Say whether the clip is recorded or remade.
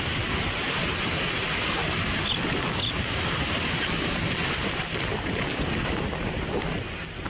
recorded